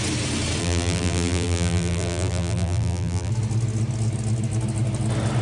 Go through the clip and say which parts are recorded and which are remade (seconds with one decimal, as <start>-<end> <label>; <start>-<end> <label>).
0.0-0.6 recorded; 0.6-3.3 remade; 3.3-5.4 recorded